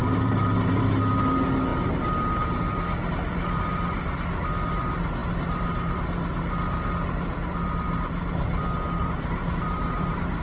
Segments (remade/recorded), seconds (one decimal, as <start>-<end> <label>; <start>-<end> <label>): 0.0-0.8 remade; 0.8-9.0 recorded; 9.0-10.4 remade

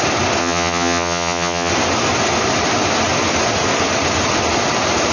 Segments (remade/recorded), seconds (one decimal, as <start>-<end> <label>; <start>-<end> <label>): 0.0-0.4 recorded; 0.4-1.7 remade; 1.7-5.1 recorded

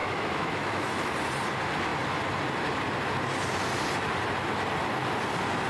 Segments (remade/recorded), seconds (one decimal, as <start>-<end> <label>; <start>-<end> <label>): 0.0-1.1 remade; 1.1-5.7 recorded